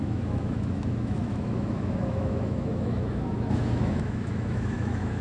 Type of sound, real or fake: fake